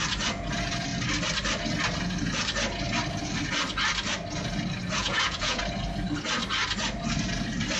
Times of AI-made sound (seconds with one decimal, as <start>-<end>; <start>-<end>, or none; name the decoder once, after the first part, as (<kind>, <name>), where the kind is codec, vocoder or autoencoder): 5.0-5.6 (vocoder, Vocos)